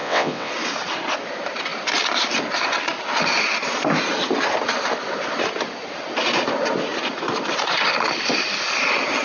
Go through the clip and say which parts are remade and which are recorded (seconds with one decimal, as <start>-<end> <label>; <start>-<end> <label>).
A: 0.0-0.5 remade; 0.5-9.2 recorded